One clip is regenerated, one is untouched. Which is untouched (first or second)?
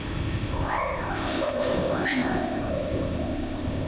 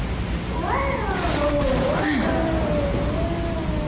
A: second